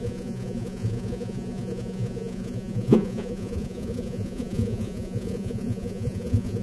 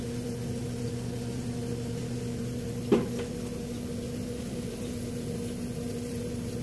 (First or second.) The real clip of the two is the second